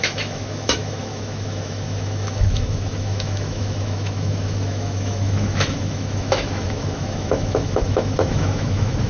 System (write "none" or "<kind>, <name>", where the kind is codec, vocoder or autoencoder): autoencoder, DAC-VAE